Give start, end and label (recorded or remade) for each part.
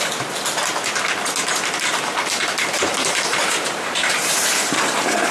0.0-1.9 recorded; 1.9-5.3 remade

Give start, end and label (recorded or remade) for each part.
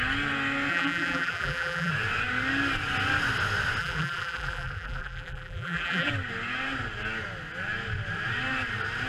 0.0-0.7 recorded; 0.7-1.9 remade; 1.9-3.8 recorded; 3.8-6.1 remade; 6.1-9.1 recorded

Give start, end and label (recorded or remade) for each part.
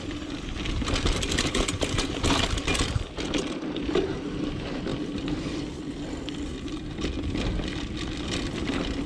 0.0-9.1 recorded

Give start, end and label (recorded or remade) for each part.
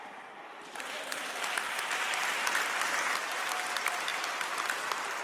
0.0-0.5 recorded; 0.5-2.5 remade; 2.5-5.2 recorded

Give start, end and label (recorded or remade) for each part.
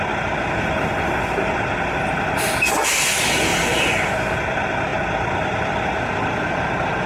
0.0-7.1 recorded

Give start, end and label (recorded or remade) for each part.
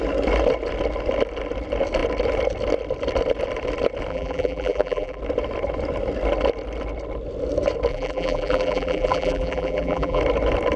0.0-4.1 recorded; 4.1-5.2 remade; 5.2-7.9 recorded; 7.9-10.2 remade; 10.2-10.8 recorded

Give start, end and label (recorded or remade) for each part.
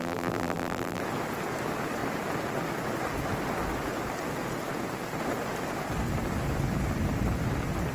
0.0-1.0 remade; 1.0-7.9 recorded